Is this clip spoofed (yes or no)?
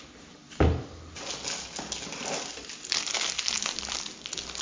no